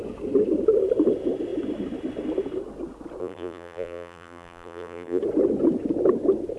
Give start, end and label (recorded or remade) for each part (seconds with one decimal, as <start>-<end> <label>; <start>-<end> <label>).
0.0-3.2 recorded; 3.2-5.2 remade; 5.2-6.6 recorded